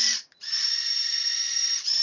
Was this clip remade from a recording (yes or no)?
no